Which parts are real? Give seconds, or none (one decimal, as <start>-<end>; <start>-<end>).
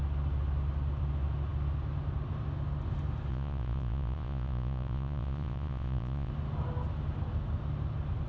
0.0-3.3; 6.3-8.3